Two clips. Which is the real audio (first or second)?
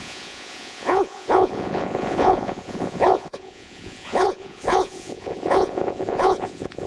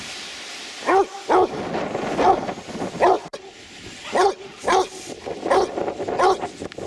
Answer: second